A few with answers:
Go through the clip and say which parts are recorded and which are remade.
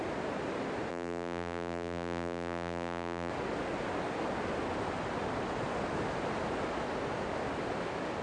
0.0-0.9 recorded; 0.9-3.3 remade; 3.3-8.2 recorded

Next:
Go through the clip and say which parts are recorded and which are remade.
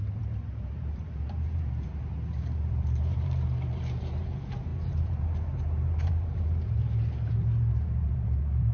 0.0-8.7 remade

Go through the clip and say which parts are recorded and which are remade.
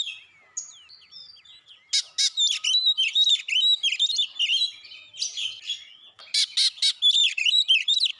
0.0-7.2 recorded; 7.2-8.2 remade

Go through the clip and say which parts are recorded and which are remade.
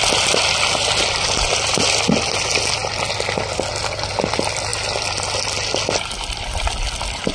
0.0-4.7 recorded; 4.7-5.4 remade; 5.4-7.3 recorded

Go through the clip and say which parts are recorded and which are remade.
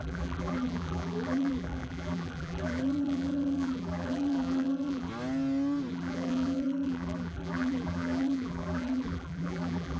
0.0-5.1 remade; 5.1-5.9 recorded; 5.9-10.0 remade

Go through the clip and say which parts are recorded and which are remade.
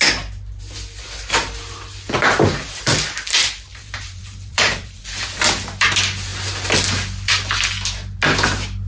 0.0-3.7 recorded; 3.7-5.0 remade; 5.0-8.9 recorded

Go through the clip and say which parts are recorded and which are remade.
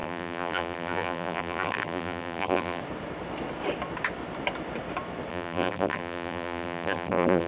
0.0-2.8 remade; 2.8-5.3 recorded; 5.3-7.5 remade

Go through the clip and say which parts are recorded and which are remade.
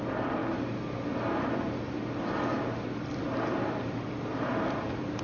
0.0-0.4 remade; 0.4-3.5 recorded; 3.5-5.2 remade